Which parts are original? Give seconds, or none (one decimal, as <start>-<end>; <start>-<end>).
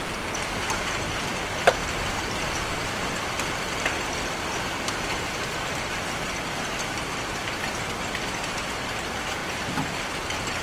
0.0-10.6